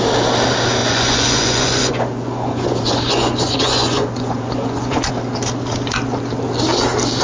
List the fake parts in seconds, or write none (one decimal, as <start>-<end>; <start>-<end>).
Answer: 0.8-5.1